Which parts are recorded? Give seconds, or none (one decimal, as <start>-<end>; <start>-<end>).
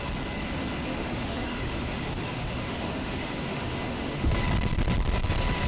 0.0-0.9; 4.3-5.7